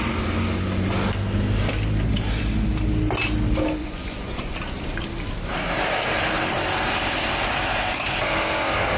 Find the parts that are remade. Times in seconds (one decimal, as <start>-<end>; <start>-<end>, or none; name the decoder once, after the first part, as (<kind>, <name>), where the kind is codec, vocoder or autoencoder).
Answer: 3.8-4.5 (vocoder, Vocos)